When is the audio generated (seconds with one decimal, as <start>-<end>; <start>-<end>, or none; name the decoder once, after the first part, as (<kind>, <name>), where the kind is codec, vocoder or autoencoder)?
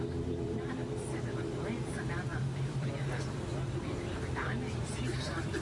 0.0-5.6 (vocoder, BigVGAN v2)